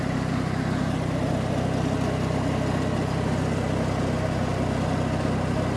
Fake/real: real